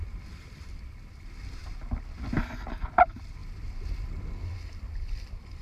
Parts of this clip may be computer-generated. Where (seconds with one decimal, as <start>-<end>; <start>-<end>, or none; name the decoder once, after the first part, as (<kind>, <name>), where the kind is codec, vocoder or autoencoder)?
0.0-1.6 (vocoder, BigVGAN v2); 2.9-3.4; 4.5-5.6